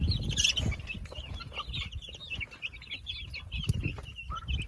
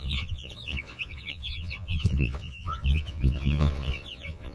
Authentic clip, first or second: first